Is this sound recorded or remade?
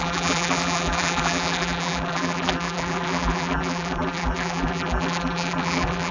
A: remade